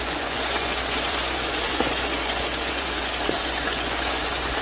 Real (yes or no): no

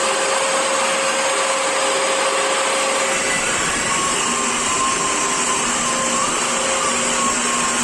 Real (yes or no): yes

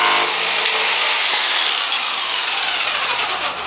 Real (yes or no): yes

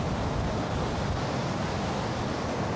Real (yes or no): yes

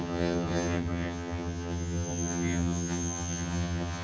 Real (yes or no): no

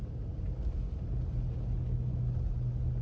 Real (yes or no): yes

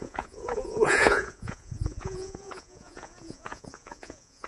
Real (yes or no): no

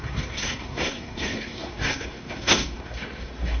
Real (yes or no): no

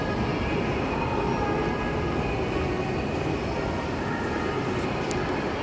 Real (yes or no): yes